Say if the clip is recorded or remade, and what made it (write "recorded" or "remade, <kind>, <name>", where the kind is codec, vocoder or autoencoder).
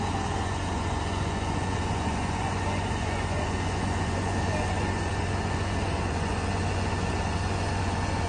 remade, vocoder, Vocos